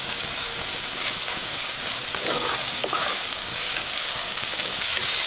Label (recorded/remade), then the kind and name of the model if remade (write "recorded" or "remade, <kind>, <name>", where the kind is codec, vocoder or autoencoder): remade, codec, DAC